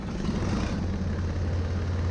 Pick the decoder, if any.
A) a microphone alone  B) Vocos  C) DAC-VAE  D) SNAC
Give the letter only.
A